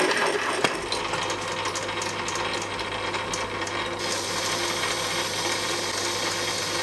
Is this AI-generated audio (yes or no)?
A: no